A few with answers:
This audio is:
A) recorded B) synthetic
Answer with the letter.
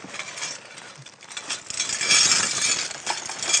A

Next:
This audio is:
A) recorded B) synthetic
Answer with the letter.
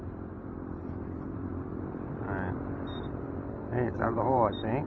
B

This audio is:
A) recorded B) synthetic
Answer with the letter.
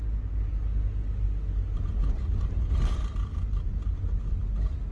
A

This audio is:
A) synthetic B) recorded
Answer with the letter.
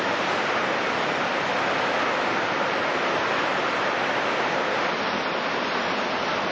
B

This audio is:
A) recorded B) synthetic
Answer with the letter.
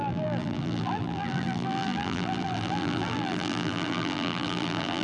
B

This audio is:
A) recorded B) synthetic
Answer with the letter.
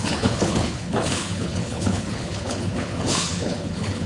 B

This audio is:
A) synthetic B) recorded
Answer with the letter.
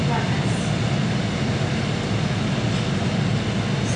B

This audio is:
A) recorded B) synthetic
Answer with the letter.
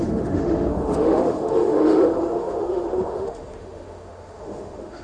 B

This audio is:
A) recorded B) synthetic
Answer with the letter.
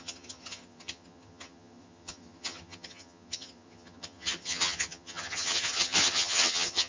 B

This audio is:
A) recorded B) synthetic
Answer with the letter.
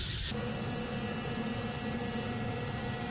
A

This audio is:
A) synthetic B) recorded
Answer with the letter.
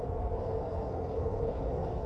A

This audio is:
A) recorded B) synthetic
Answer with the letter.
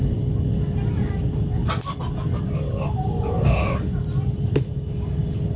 A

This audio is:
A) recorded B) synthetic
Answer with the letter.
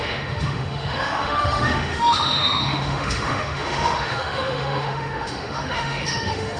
B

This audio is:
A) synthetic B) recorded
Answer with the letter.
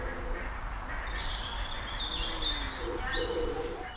B